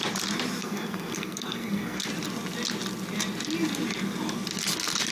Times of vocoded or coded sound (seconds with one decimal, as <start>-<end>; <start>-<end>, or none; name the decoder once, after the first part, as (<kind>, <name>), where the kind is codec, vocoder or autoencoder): 0.6-2.1 (codec, SNAC)